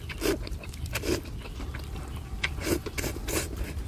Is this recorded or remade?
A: recorded